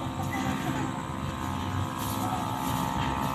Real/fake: real